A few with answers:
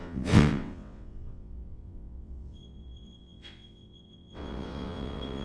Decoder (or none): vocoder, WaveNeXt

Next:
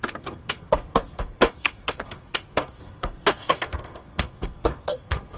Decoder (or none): codec, SNAC